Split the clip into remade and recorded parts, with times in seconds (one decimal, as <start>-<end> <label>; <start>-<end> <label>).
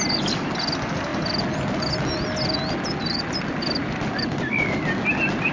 0.0-5.5 recorded